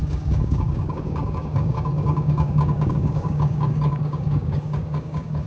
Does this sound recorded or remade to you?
remade